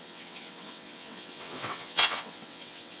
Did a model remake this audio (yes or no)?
yes